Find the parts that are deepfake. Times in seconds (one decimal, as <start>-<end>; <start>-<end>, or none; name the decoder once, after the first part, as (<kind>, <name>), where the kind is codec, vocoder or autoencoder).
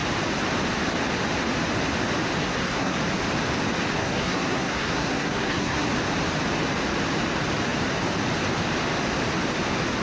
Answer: 2.4-3.0 (codec, SNAC); 4.0-5.9